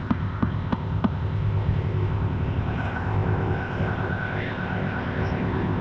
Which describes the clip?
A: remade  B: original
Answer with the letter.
A